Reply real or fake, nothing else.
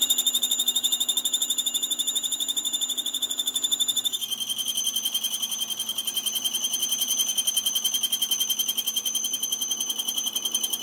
fake